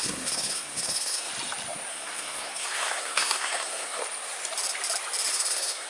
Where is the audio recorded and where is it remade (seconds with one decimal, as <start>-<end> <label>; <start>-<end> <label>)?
0.0-1.3 remade; 1.3-1.9 recorded; 1.9-4.0 remade; 4.0-5.3 recorded; 5.3-5.9 remade